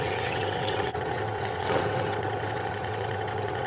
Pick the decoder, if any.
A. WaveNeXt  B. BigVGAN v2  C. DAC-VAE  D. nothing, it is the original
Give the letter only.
A